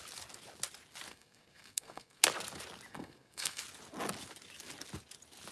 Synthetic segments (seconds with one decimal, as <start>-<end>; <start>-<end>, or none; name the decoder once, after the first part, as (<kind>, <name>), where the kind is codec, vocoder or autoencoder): 1.1-2.2 (codec, SNAC); 2.9-3.6